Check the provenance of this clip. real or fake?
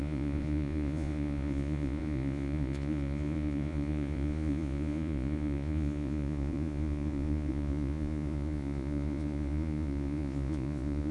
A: fake